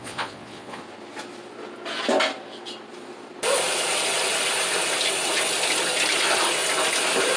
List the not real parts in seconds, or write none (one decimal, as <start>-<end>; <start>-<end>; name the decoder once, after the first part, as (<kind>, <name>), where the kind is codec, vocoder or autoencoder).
0.0-0.8 (vocoder, Vocos)